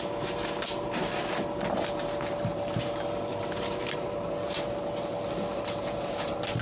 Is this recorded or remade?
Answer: recorded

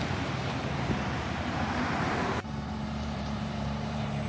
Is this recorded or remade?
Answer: remade